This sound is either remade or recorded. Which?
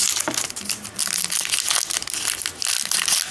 recorded